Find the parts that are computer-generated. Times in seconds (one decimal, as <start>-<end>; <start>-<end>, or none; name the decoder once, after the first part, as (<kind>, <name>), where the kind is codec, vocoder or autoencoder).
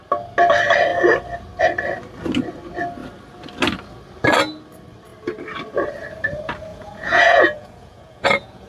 6.7-8.7 (vocoder, Vocos)